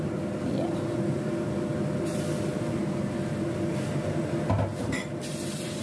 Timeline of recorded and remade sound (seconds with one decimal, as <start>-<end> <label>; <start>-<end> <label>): 0.0-5.8 recorded